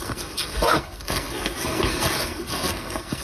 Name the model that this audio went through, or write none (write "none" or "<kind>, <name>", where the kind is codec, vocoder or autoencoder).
codec, SNAC